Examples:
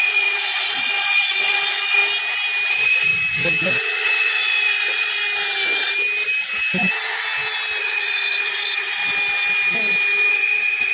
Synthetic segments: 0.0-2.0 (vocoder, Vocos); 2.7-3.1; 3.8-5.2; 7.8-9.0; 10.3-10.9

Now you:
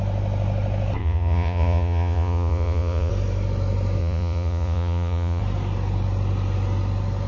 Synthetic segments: 1.0-3.1 (vocoder, Vocos); 4.0-5.4

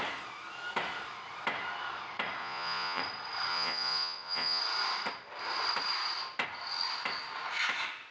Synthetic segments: 2.4-3.0 (vocoder, Vocos); 3.5-4.6

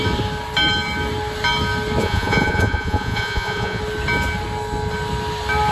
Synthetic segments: 2.0-3.8 (vocoder, Vocos)

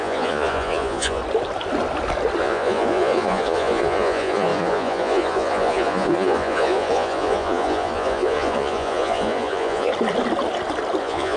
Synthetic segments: 0.0-1.2 (vocoder, Vocos); 2.4-9.9; 11.0-11.4

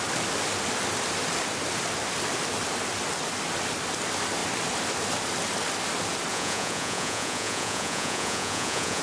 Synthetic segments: 6.3-9.0 (vocoder, Vocos)

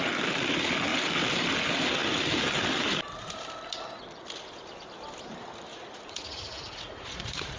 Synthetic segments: 5.7-7.6 (vocoder, Vocos)

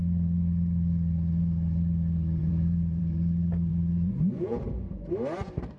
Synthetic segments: 2.4-3.0 (vocoder, Vocos); 3.7-4.6